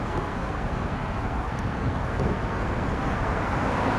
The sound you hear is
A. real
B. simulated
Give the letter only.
B